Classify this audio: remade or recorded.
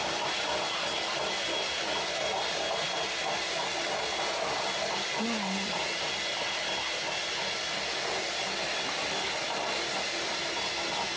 recorded